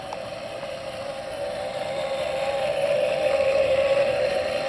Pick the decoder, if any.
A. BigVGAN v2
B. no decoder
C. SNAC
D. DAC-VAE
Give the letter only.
B